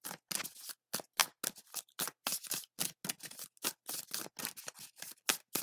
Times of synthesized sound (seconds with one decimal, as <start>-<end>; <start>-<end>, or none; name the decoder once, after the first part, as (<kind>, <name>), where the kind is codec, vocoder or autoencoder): none